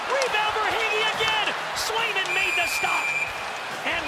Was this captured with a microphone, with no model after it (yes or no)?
yes